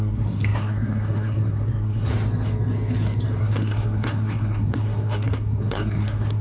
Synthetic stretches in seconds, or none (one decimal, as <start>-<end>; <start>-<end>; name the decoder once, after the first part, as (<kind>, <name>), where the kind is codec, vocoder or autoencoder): 0.0-2.1 (codec, SNAC); 3.4-6.4